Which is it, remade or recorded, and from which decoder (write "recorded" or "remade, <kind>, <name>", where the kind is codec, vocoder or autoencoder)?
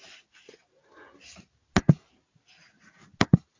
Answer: recorded